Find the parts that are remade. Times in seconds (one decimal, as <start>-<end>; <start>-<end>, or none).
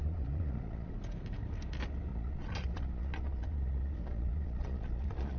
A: 0.0-0.9; 2.1-5.4